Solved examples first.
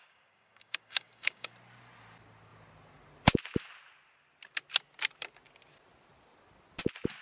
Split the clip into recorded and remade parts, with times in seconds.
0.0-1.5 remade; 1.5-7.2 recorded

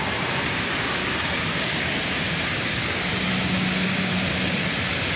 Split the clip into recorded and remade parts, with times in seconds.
0.0-1.0 recorded; 1.0-4.1 remade; 4.1-5.2 recorded

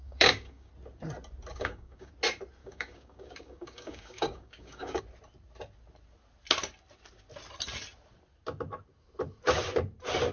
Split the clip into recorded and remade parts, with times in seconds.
0.0-0.7 remade; 0.7-1.5 recorded; 1.5-2.1 remade; 2.1-2.6 recorded; 2.6-5.0 remade; 5.0-10.3 recorded